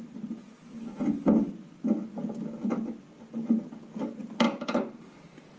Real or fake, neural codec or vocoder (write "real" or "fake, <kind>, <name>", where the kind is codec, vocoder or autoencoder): real